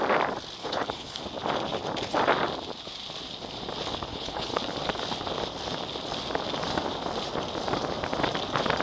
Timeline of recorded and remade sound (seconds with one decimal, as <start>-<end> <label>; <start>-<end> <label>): 0.0-0.6 recorded; 0.6-1.2 remade; 1.2-4.1 recorded; 4.1-4.6 remade; 4.6-8.8 recorded